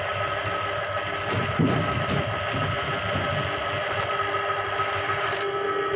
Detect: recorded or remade recorded